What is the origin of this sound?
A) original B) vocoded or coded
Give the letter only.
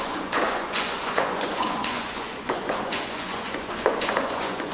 B